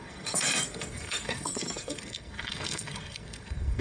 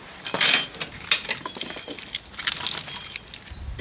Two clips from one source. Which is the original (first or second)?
second